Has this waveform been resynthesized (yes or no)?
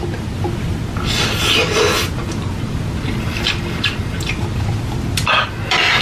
no